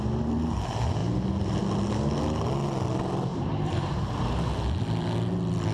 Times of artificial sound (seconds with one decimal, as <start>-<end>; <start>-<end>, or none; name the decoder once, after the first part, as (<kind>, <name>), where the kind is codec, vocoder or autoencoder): 3.3-4.5 (vocoder, BigVGAN v2)